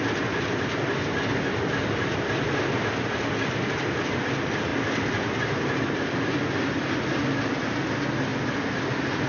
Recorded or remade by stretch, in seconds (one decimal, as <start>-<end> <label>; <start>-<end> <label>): 0.0-9.3 recorded